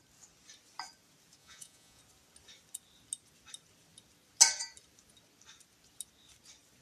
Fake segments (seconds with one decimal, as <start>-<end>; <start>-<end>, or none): 1.4-2.0